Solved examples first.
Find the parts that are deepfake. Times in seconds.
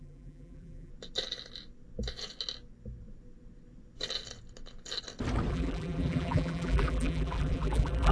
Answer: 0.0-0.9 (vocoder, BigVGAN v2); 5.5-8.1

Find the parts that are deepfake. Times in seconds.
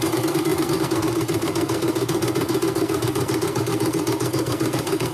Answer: 0.0-5.1 (codec, SNAC)